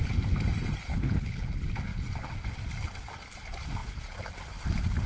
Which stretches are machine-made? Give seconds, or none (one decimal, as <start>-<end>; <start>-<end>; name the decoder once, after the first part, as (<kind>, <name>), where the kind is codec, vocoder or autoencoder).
0.9-1.5 (codec, HILCodec)